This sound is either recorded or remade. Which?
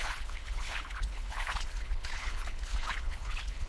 remade